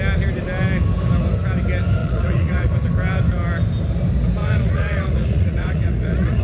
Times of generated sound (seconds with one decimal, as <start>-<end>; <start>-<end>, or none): 2.0-2.7; 4.4-6.4